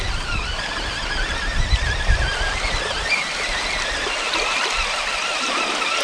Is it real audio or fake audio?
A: real